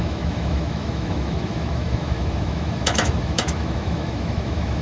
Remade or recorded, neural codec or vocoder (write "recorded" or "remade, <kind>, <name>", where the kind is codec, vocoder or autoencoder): remade, autoencoder, DAC-VAE